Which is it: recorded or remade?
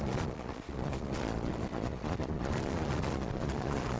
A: remade